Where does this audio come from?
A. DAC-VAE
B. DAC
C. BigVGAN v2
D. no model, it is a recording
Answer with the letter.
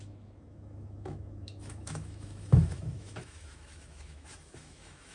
A